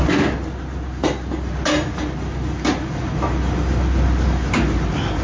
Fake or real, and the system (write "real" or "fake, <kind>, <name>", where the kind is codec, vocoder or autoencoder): real